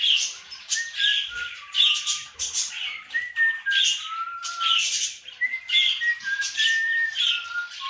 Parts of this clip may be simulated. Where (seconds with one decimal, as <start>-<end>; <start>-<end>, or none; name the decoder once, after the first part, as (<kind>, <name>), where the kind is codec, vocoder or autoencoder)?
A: 1.1-2.7 (vocoder, BigVGAN v2); 4.4-7.3